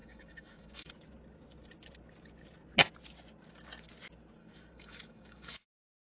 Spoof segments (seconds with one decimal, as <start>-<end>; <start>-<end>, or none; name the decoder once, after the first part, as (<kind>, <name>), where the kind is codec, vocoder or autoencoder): 0.0-0.9 (autoencoder, DAC-VAE); 4.4-6.0